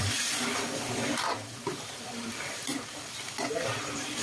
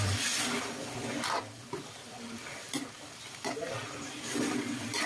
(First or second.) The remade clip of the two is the first